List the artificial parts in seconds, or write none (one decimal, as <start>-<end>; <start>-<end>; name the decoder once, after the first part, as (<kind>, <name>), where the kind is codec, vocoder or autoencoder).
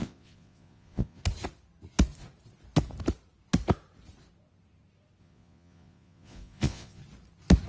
0.0-1.2 (vocoder, Vocos); 5.2-7.0